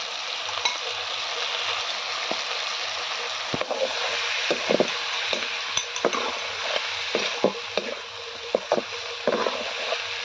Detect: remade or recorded recorded